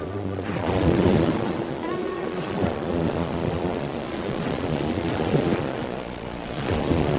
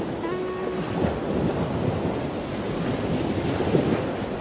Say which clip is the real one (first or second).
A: second